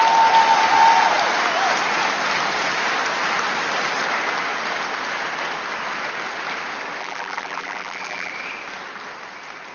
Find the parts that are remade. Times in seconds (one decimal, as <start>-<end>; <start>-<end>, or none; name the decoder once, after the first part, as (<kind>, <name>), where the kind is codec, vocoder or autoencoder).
7.0-8.3 (vocoder, BigVGAN v2)